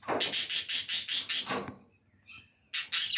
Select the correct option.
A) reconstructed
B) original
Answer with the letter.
B